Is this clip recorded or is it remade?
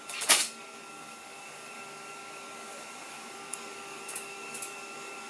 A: remade